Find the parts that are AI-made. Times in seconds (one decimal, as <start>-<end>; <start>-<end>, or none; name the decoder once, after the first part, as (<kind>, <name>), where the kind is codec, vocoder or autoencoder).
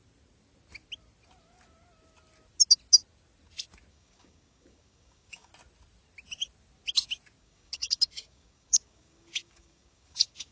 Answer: 3.9-5.5 (codec, DAC); 7.4-10.5